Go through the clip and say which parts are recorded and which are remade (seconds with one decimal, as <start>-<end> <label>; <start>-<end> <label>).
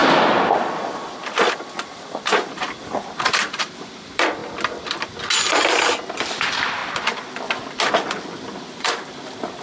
0.0-0.9 recorded; 0.9-4.4 remade; 4.4-6.3 recorded; 6.3-6.8 remade; 6.8-8.2 recorded; 8.2-9.6 remade